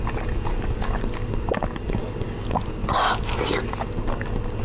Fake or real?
real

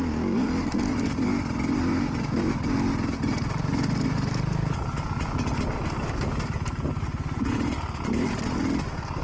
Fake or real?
real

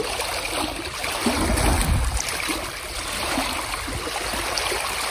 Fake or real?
real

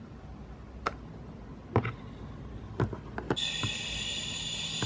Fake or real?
real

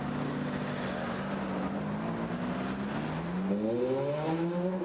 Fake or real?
real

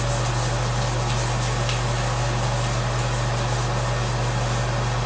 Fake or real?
real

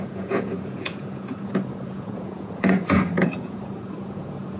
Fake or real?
fake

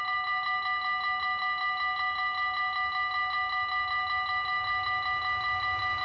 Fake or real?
real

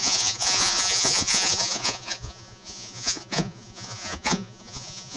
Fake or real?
fake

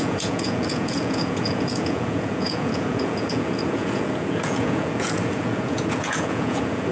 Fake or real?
fake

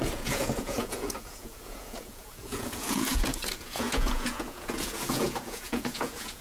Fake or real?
fake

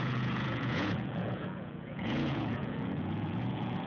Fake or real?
fake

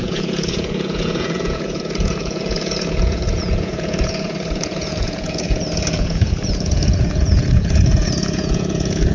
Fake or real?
fake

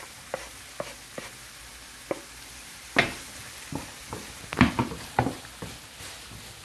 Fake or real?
real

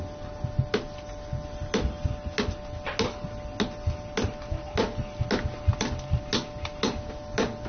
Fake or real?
real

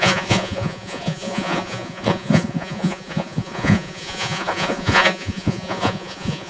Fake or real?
fake